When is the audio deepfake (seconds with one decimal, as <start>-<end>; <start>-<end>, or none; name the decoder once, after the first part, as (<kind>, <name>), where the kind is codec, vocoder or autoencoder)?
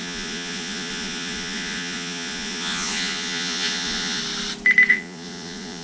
0.0-4.2 (vocoder, Vocos); 4.9-5.8